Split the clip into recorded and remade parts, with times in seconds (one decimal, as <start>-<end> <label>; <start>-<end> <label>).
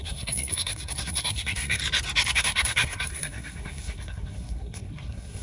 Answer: 0.0-1.8 remade; 1.8-2.3 recorded; 2.3-5.4 remade